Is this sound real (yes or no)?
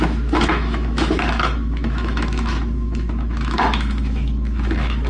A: no